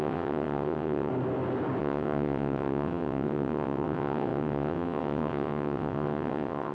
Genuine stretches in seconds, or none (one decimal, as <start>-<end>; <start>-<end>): 1.1-1.8